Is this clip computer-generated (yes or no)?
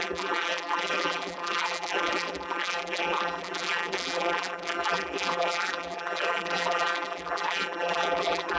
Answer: yes